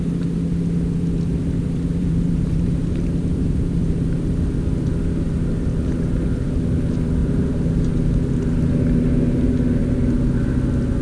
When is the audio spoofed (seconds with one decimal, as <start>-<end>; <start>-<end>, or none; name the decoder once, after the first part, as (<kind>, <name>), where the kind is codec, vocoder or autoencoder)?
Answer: 2.0-4.3 (vocoder, BigVGAN v2); 7.2-7.9